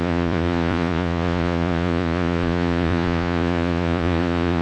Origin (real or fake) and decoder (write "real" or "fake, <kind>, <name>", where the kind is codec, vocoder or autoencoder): fake, vocoder, Vocos